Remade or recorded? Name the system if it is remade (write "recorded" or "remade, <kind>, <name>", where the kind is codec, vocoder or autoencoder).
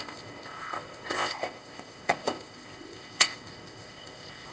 remade, codec, ZipCodec